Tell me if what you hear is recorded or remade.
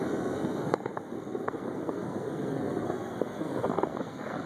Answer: remade